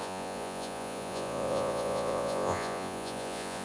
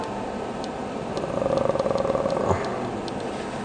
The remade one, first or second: first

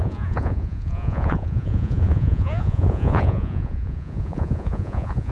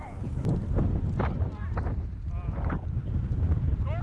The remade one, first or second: first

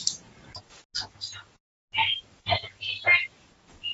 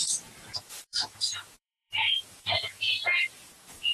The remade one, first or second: second